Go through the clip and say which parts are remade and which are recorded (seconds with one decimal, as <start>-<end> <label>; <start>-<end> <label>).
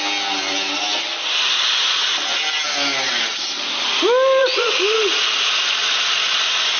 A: 0.0-4.4 recorded; 4.4-5.2 remade; 5.2-6.8 recorded